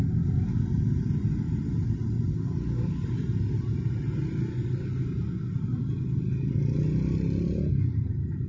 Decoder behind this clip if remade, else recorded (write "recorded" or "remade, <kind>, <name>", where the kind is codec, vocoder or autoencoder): recorded